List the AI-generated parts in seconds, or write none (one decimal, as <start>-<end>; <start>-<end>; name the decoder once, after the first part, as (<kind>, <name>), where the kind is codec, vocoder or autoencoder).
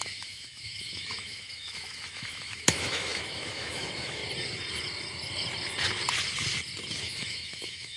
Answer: 0.0-4.2 (autoencoder, DAC-VAE); 7.0-8.0